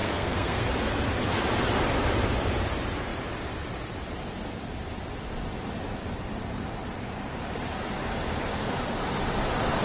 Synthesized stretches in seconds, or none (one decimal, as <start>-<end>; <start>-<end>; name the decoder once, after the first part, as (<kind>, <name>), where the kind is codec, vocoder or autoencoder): 0.0-0.7 (codec, SNAC)